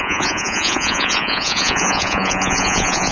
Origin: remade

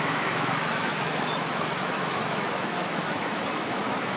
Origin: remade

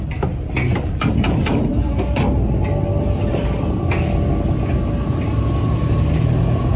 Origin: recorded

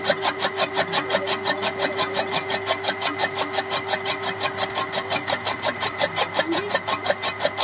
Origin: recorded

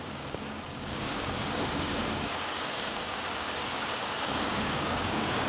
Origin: remade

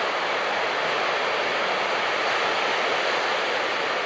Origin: recorded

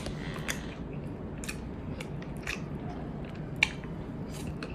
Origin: recorded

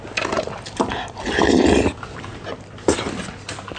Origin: recorded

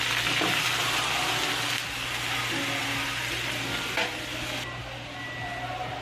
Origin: recorded